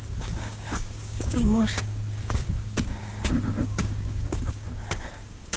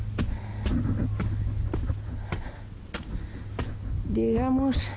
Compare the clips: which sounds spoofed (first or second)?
first